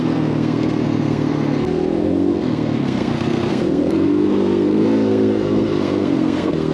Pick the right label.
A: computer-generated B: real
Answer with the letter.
A